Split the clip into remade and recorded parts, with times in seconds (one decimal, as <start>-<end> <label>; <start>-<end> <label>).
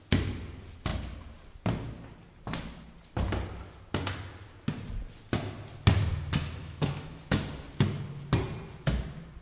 0.0-6.6 recorded; 6.6-7.4 remade; 7.4-9.4 recorded